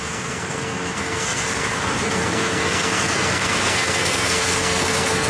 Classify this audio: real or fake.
fake